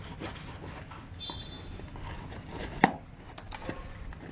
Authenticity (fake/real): real